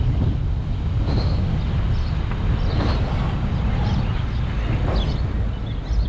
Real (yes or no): yes